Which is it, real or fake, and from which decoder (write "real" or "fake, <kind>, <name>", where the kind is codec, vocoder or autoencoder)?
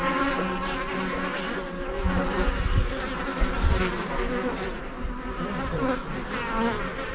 real